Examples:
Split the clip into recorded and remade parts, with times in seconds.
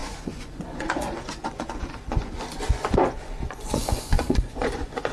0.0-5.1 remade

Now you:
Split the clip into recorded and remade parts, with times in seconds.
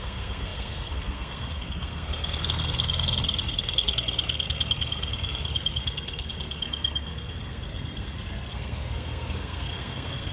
0.0-10.3 remade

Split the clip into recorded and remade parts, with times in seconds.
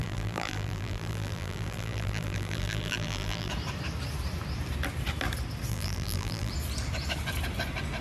0.0-3.5 remade; 3.5-5.7 recorded; 5.7-6.5 remade; 6.5-8.0 recorded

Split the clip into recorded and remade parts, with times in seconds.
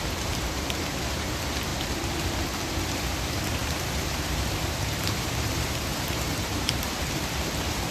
0.0-1.7 remade; 1.7-2.7 recorded; 2.7-7.9 remade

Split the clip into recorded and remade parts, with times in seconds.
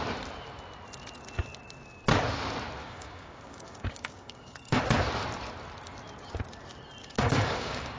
0.0-2.8 recorded; 2.8-4.8 remade; 4.8-7.0 recorded; 7.0-8.0 remade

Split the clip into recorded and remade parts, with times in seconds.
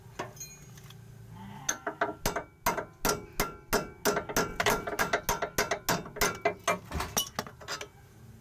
0.0-4.5 recorded; 4.5-5.0 remade; 5.0-8.4 recorded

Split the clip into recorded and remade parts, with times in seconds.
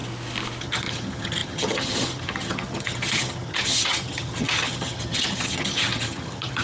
0.0-0.6 recorded; 0.6-6.6 remade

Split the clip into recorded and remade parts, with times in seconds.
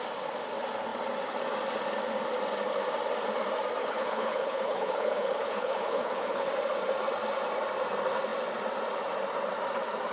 0.0-3.8 recorded; 3.8-6.5 remade; 6.5-10.1 recorded